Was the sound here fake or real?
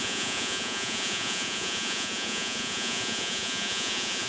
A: fake